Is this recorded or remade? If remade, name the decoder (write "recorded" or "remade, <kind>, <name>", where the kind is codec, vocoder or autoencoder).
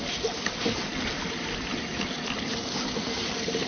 recorded